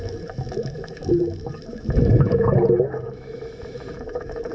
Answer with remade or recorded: remade